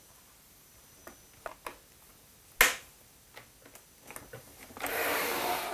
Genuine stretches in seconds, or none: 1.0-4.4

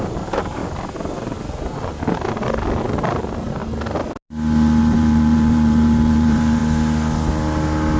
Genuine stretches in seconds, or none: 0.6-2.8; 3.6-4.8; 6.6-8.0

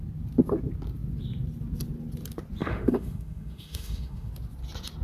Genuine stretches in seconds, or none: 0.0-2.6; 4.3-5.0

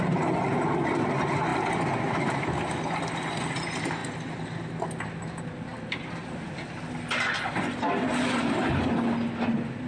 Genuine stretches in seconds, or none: 0.0-9.9